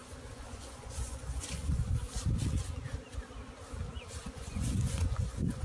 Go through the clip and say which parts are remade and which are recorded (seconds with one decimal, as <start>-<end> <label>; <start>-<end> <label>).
0.0-2.0 remade; 2.0-4.2 recorded; 4.2-5.6 remade